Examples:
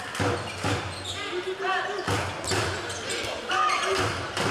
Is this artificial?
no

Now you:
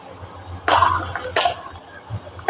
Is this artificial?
no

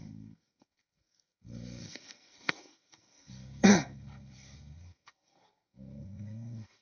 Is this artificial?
yes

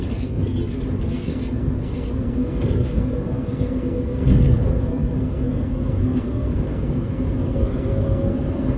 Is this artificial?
yes